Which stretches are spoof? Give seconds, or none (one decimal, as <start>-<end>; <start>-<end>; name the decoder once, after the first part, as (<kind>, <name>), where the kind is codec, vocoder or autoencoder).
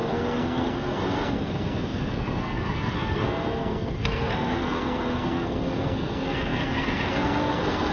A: 0.0-7.9 (codec, SNAC)